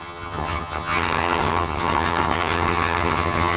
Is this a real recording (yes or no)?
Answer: no